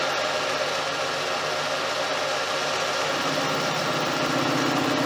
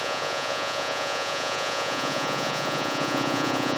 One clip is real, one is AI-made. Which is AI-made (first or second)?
second